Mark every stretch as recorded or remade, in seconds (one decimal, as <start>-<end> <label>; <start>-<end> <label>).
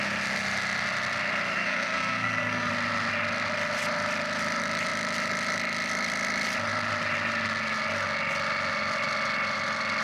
0.0-1.5 recorded; 1.5-2.7 remade; 2.7-10.0 recorded